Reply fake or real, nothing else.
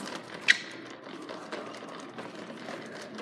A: real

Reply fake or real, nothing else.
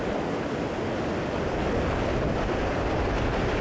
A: real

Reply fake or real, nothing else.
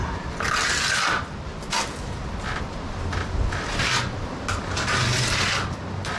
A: real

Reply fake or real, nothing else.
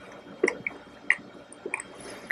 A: real